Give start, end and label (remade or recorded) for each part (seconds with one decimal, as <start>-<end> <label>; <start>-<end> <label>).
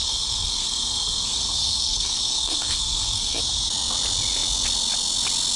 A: 0.0-3.4 remade; 3.4-5.6 recorded